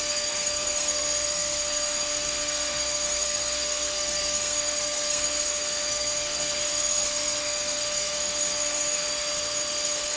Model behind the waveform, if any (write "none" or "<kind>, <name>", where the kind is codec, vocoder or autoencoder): codec, SNAC